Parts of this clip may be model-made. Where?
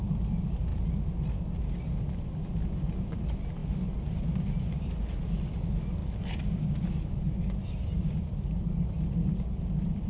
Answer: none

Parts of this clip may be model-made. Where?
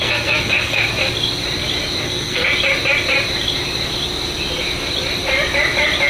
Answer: 0.0-0.9 (codec, SNAC); 2.0-2.5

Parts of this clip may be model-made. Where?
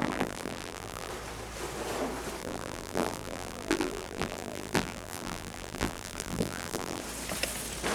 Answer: 0.0-1.1 (vocoder, BigVGAN v2); 2.4-7.0